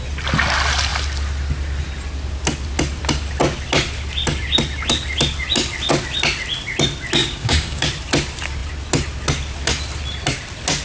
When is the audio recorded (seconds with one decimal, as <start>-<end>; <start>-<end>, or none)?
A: 0.0-7.2; 7.9-10.8